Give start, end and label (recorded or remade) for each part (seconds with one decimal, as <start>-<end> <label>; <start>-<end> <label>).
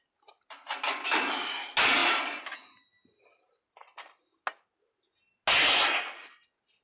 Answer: 0.0-6.8 recorded